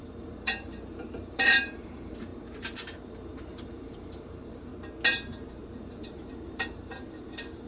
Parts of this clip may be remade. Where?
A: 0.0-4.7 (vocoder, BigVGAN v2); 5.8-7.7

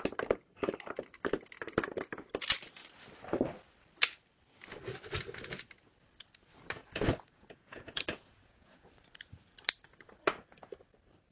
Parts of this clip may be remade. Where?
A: 6.8-8.9 (vocoder, Vocos)

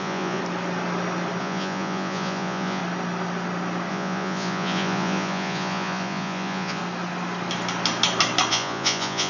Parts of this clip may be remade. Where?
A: 0.0-0.4 (vocoder, Vocos); 1.4-2.8; 3.9-6.8; 8.5-9.3

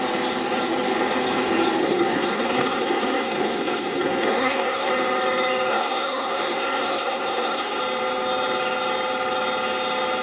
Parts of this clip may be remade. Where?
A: 1.8-4.9 (codec, SNAC); 5.7-7.8